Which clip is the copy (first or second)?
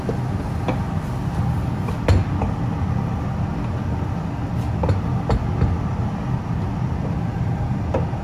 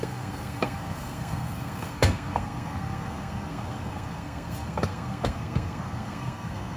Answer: second